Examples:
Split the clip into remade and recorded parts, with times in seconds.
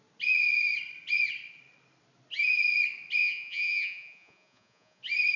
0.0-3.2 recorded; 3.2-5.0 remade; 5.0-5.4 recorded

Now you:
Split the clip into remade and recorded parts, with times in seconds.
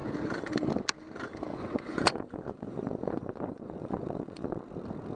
0.0-1.5 recorded; 1.5-4.6 remade; 4.6-5.1 recorded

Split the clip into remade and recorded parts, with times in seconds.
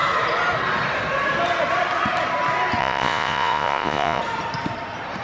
0.0-2.8 recorded; 2.8-4.2 remade; 4.2-5.2 recorded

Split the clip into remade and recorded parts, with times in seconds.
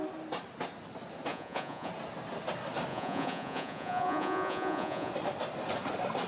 0.0-1.3 recorded; 1.3-1.9 remade; 1.9-2.9 recorded; 2.9-5.1 remade; 5.1-6.3 recorded